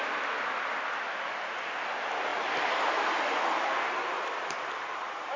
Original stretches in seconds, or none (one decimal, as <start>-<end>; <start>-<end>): 0.0-5.4